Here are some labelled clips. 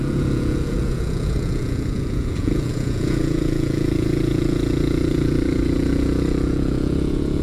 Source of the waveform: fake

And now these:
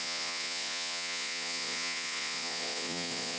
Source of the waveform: fake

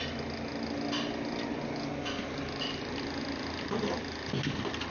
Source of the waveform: real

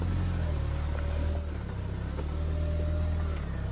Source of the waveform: real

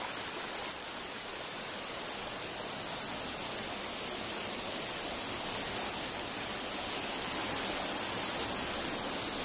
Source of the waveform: real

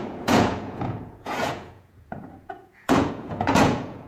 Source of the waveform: fake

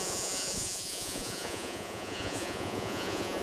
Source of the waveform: fake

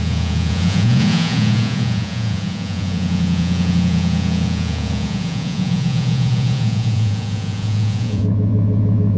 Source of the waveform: fake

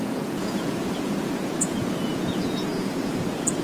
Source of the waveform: fake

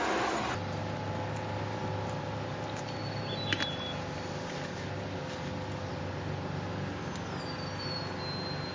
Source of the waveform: real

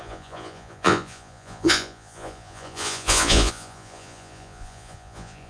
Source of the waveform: fake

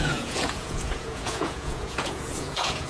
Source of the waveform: fake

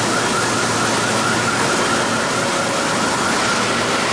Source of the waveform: real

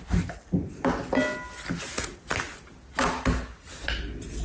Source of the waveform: real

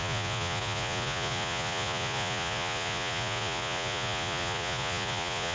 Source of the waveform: fake